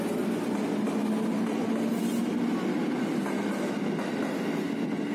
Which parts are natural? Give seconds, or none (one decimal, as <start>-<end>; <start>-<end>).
0.0-5.1

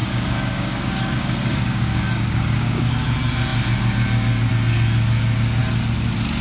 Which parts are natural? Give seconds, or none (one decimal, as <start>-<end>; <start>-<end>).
2.9-6.4

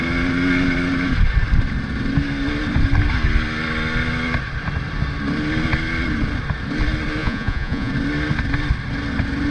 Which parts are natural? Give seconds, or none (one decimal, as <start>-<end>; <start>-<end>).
0.0-7.2; 7.9-9.5

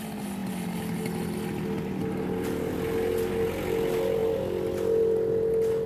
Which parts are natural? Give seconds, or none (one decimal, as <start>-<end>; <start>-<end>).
0.0-5.9

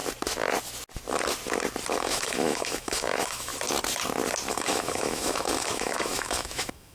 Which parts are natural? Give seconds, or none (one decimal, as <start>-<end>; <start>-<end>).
0.0-2.0; 3.5-4.5

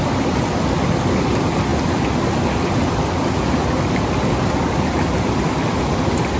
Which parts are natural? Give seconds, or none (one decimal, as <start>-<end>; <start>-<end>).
0.0-6.4

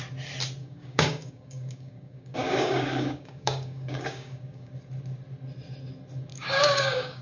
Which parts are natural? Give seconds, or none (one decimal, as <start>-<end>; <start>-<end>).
0.0-0.6; 4.7-6.3